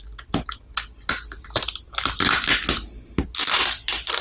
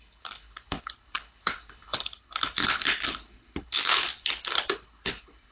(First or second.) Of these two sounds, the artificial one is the second